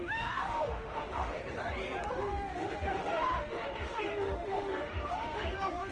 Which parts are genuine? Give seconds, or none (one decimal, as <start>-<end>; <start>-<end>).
1.4-2.1